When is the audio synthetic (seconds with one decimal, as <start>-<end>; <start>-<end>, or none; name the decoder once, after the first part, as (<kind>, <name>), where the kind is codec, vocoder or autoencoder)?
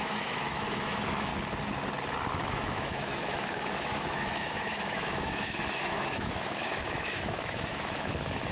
0.0-1.3 (autoencoder, DAC-VAE); 2.5-8.5